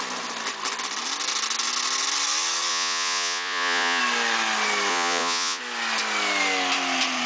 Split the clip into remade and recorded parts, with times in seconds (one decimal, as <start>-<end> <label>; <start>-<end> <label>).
0.0-2.7 recorded; 2.7-4.0 remade; 4.0-4.9 recorded; 4.9-5.6 remade; 5.6-7.3 recorded